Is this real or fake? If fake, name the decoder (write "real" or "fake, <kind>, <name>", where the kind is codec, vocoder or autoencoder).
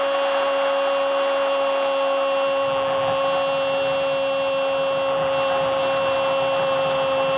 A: real